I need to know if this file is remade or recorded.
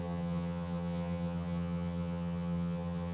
remade